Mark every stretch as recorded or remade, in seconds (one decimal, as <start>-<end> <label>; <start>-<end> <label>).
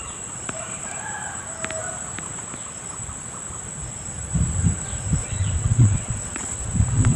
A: 0.0-5.2 recorded; 5.2-7.2 remade